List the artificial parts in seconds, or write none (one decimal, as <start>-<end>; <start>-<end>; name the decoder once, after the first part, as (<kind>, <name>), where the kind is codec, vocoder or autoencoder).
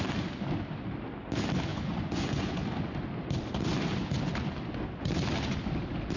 1.7-2.6 (vocoder, Vocos)